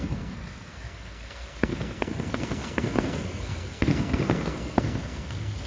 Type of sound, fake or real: fake